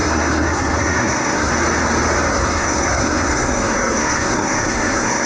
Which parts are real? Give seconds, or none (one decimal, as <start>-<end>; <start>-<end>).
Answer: 1.5-2.3